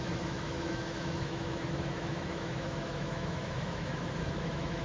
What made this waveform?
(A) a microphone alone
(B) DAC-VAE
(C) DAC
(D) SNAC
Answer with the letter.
B